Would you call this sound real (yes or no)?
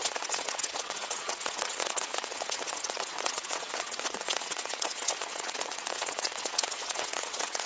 no